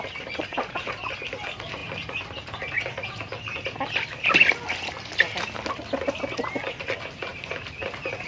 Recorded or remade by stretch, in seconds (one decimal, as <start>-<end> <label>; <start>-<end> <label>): 0.0-0.5 recorded; 0.5-1.1 remade; 1.1-8.3 recorded